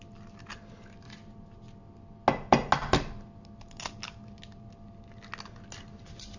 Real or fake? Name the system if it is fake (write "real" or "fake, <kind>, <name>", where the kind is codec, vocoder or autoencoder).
real